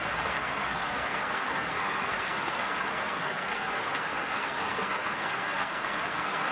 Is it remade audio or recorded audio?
remade